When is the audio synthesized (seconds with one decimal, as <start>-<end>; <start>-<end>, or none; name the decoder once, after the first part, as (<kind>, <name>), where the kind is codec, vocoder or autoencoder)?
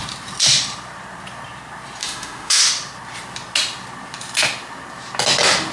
2.0-2.6 (autoencoder, DAC-VAE)